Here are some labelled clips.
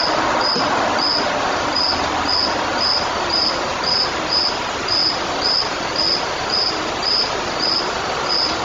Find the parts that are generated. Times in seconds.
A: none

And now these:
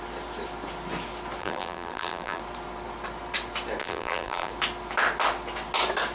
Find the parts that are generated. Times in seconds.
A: 1.4-2.4; 3.8-4.5

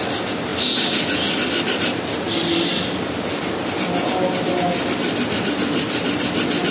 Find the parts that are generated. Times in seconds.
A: none

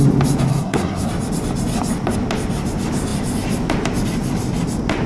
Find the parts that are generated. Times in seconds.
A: 0.5-1.1

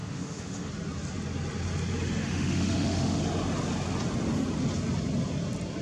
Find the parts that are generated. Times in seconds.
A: 0.0-0.7; 2.2-3.2

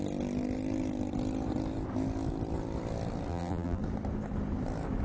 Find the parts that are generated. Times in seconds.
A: 3.3-3.8

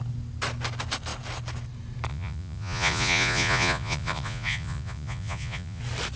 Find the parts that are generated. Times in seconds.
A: 2.1-5.8

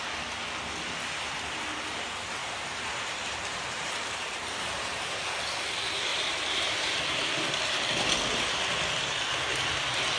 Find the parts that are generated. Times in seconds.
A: 2.4-5.2; 6.1-7.2